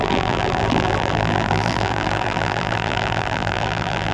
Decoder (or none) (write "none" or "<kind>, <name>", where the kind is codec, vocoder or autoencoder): vocoder, BigVGAN v2